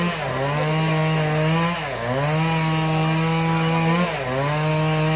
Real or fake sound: real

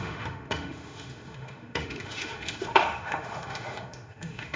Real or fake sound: fake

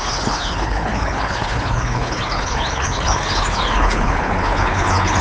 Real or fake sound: fake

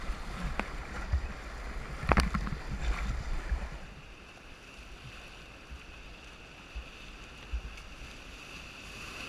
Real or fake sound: real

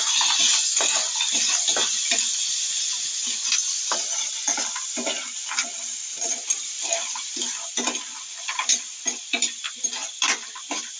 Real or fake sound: real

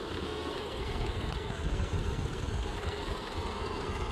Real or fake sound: fake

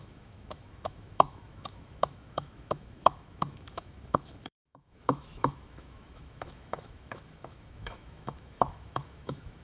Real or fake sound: fake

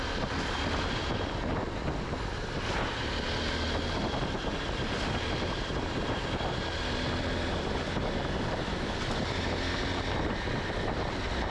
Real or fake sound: real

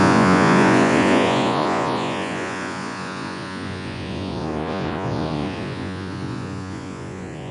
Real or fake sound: fake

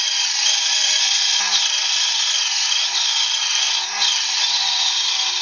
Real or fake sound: real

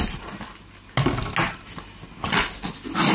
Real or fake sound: real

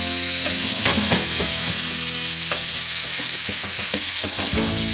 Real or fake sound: fake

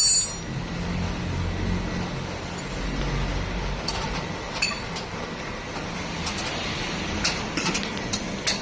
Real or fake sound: real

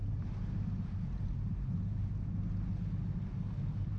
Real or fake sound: real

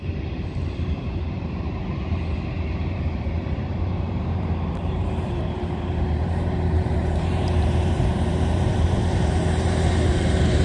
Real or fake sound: fake